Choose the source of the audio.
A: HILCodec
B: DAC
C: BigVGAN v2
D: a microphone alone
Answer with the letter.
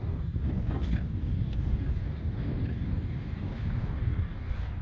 B